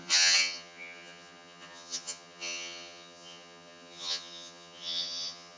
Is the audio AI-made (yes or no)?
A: yes